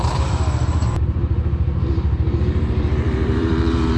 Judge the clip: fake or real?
fake